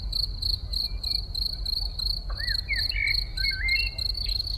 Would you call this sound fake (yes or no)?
no